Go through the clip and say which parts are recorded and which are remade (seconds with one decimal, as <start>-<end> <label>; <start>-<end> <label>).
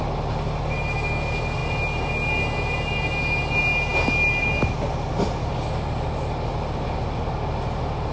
0.0-8.1 recorded